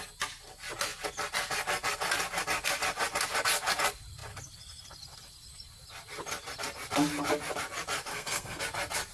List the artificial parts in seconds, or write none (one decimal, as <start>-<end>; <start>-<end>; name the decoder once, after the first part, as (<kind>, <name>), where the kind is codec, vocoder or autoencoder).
8.1-8.6 (codec, SNAC)